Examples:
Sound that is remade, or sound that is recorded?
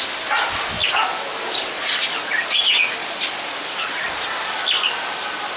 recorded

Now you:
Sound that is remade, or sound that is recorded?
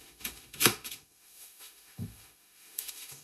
remade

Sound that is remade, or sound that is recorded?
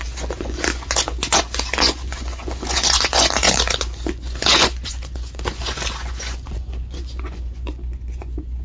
remade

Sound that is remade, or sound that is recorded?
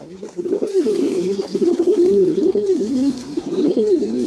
remade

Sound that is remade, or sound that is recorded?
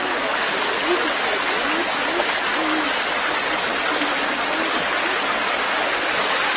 recorded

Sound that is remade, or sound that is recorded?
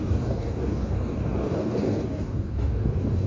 remade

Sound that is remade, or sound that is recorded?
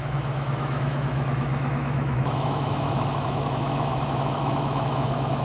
remade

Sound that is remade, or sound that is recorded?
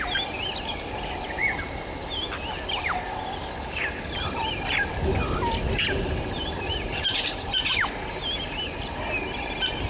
recorded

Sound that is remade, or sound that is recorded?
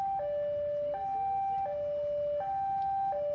recorded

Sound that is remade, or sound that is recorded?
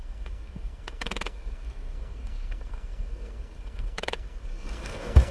remade